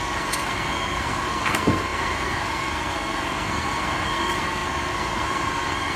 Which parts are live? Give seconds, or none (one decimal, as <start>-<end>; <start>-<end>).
none